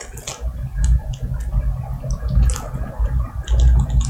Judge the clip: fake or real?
real